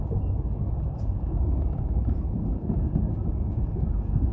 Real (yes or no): no